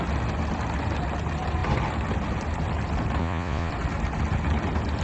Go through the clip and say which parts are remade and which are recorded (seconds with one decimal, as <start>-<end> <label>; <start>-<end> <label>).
0.0-3.2 recorded; 3.2-3.7 remade; 3.7-5.0 recorded